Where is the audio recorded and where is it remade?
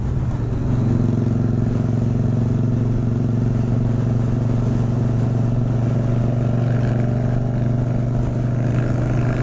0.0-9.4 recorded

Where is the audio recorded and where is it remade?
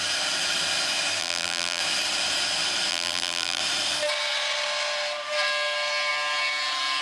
0.0-1.2 recorded; 1.2-1.8 remade; 1.8-2.9 recorded; 2.9-3.6 remade; 3.6-7.0 recorded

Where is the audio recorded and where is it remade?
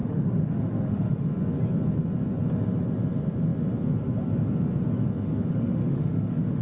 0.0-1.3 remade; 1.3-5.5 recorded; 5.5-6.6 remade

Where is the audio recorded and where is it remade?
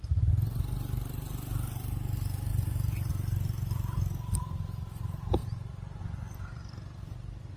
0.0-2.5 recorded; 2.5-3.1 remade; 3.1-5.4 recorded; 5.4-6.0 remade; 6.0-7.6 recorded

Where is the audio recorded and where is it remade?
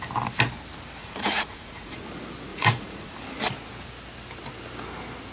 0.0-1.0 recorded; 1.0-2.0 remade; 2.0-2.5 recorded; 2.5-3.2 remade; 3.2-5.3 recorded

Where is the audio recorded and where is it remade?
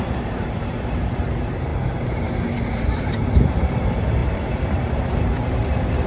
0.0-6.1 remade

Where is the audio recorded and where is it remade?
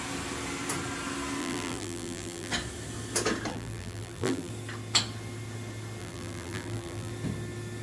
0.0-1.4 recorded; 1.4-2.5 remade; 2.5-3.5 recorded; 3.5-4.5 remade; 4.5-6.0 recorded; 6.0-7.1 remade; 7.1-7.8 recorded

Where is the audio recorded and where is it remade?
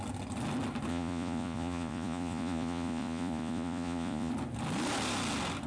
0.0-0.9 recorded; 0.9-4.3 remade; 4.3-5.7 recorded